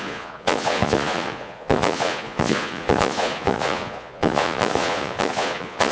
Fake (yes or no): yes